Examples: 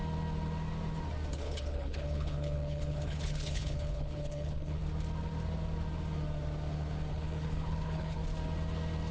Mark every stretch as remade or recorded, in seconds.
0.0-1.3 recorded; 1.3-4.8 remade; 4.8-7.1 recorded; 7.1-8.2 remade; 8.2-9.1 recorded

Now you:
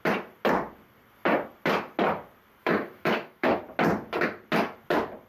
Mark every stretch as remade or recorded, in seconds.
0.0-2.6 recorded; 2.6-3.6 remade; 3.6-5.3 recorded

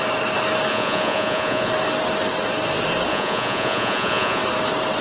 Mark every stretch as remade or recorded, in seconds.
0.0-0.7 recorded; 0.7-1.7 remade; 1.7-3.1 recorded; 3.1-4.4 remade; 4.4-5.0 recorded

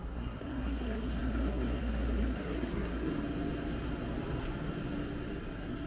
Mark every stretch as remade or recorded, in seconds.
0.0-3.1 remade; 3.1-5.5 recorded; 5.5-5.9 remade

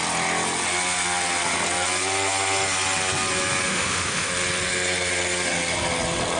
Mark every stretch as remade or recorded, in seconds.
0.0-3.7 recorded; 3.7-4.3 remade; 4.3-6.4 recorded